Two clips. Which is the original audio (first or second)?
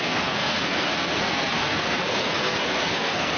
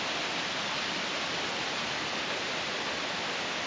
second